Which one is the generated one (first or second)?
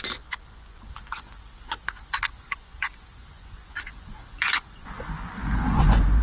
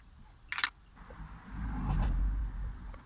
first